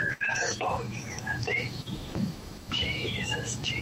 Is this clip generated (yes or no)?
yes